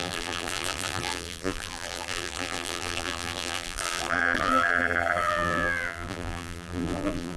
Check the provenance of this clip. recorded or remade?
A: remade